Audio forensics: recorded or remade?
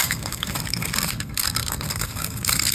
remade